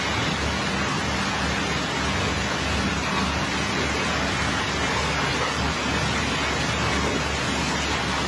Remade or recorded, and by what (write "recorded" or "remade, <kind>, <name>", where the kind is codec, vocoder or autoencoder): recorded